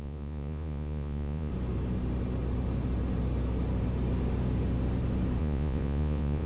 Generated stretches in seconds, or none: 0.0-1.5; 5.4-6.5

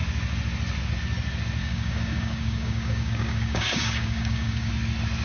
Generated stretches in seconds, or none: 1.6-4.7

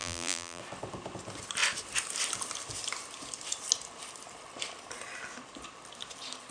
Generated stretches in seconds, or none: 0.0-0.6

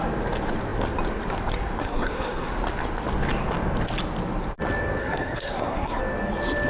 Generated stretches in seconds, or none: 1.8-2.5; 5.0-6.0

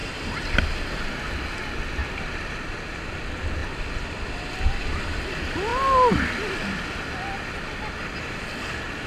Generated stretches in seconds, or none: 0.0-0.6; 2.0-2.5; 3.6-5.2

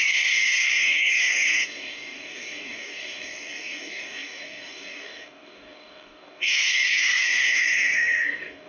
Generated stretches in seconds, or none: 0.0-8.7